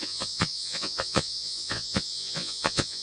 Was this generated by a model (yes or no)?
yes